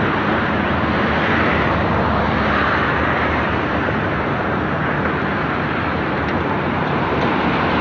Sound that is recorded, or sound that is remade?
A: remade